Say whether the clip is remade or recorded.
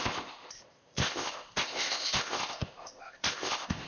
remade